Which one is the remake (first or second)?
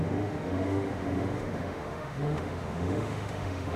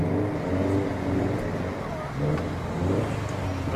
first